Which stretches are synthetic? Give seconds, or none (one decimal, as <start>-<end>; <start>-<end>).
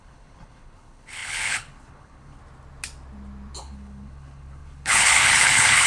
0.0-2.4; 3.6-5.9